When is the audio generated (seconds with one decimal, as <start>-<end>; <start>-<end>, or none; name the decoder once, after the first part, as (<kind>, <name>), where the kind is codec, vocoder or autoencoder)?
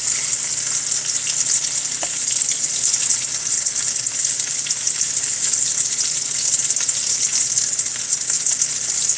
none